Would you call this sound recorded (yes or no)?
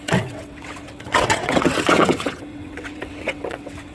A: no